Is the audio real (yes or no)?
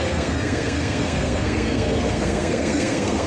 no